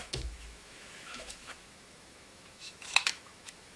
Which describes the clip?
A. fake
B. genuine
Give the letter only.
A